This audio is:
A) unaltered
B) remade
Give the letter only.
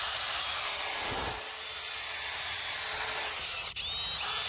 A